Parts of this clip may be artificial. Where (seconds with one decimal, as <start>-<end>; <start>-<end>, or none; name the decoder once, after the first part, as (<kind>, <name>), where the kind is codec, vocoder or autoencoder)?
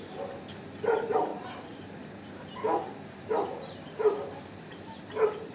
none